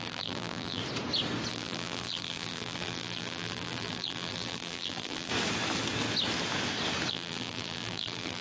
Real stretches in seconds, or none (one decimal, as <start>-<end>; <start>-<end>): 0.8-1.5; 5.3-7.1